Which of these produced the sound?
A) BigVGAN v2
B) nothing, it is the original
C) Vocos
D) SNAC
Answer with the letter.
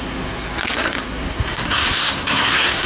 D